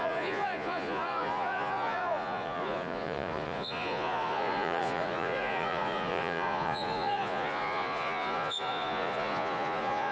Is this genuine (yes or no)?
no